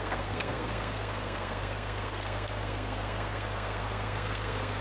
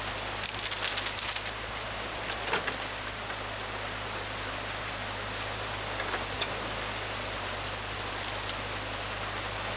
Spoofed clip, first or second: first